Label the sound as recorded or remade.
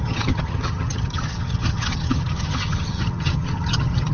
remade